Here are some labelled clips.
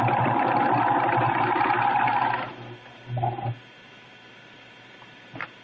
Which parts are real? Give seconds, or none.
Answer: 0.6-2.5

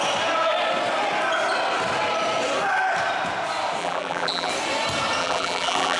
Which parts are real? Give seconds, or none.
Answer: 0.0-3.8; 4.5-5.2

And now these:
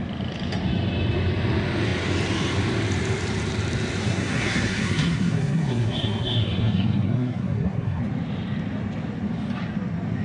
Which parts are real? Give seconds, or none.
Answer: 0.0-4.0; 8.0-10.2